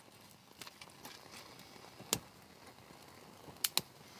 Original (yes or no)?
yes